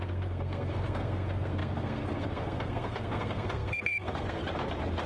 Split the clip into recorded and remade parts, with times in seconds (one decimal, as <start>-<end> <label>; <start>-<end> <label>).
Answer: 0.0-4.4 remade; 4.4-5.1 recorded